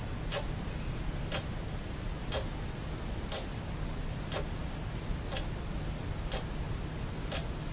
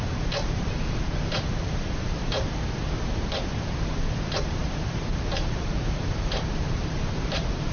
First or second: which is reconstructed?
second